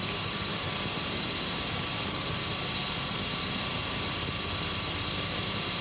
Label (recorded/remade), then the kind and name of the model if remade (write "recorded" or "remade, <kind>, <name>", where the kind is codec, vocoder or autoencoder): remade, vocoder, BigVGAN v2